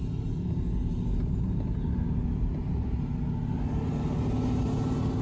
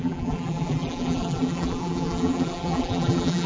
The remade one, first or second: second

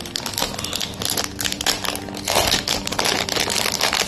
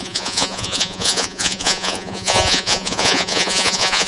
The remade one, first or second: second